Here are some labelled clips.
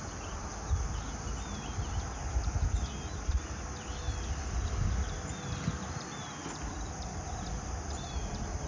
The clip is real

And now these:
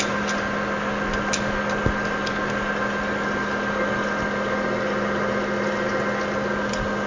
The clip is real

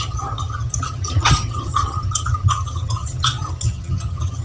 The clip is fake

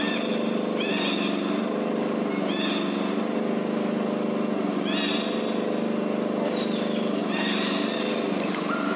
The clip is real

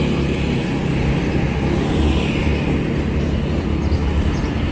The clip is real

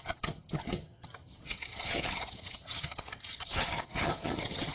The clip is fake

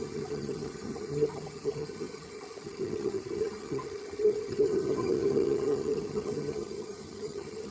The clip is fake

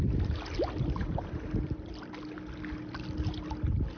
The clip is real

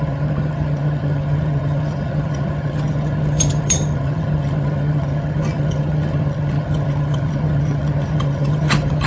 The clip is fake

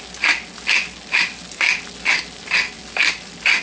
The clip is real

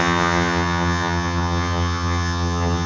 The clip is fake